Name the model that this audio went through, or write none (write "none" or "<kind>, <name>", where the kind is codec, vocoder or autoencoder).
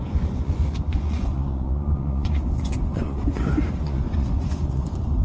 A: vocoder, Vocos